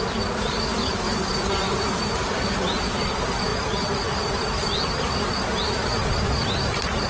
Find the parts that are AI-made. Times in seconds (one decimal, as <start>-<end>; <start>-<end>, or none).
0.7-2.2